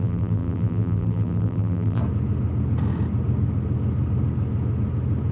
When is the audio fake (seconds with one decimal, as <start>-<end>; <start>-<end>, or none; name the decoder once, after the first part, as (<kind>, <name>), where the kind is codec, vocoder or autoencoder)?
0.0-2.0 (vocoder, BigVGAN v2)